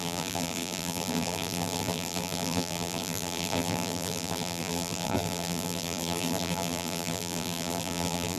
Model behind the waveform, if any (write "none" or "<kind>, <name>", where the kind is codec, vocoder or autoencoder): vocoder, BigVGAN v2